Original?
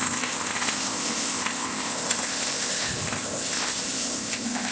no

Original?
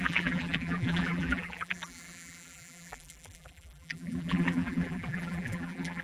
no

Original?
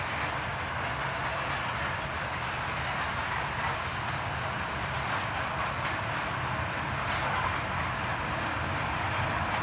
yes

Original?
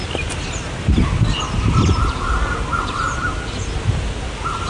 yes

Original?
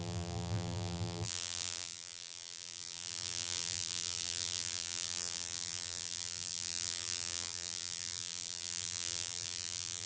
no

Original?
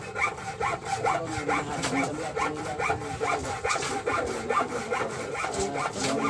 yes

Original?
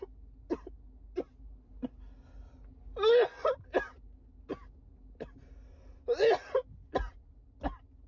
yes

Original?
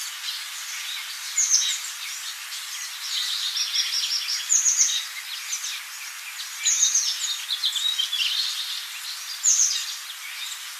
yes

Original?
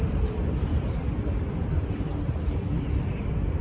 yes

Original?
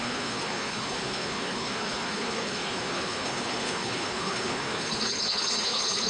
no